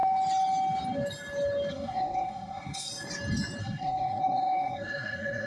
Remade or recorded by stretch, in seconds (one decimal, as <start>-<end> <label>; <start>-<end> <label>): 0.0-1.7 recorded; 1.7-2.9 remade; 2.9-3.6 recorded; 3.6-5.5 remade